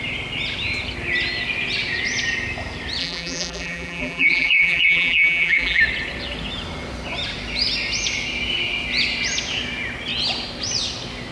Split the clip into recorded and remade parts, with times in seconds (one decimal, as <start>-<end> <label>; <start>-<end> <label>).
0.0-3.0 recorded; 3.0-5.8 remade; 5.8-11.3 recorded